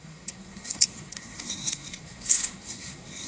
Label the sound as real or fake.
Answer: fake